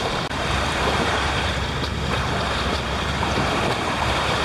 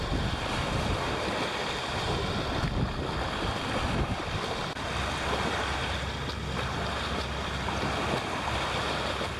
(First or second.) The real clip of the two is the second